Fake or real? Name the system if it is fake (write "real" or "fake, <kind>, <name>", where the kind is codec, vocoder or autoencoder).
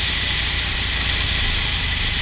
real